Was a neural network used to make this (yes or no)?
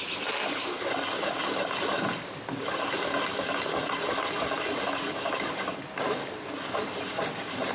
no